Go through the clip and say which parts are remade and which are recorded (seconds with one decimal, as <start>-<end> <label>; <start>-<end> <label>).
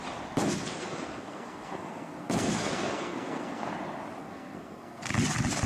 0.0-0.4 recorded; 0.4-3.7 remade; 3.7-4.2 recorded; 4.2-5.1 remade; 5.1-5.7 recorded